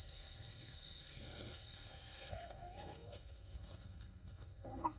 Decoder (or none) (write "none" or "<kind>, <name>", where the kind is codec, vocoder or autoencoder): codec, SNAC